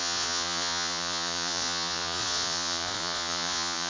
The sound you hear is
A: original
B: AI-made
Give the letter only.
B